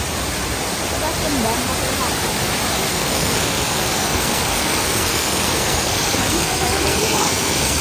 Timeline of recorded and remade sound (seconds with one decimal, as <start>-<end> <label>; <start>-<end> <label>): 0.0-2.9 recorded; 2.9-7.8 remade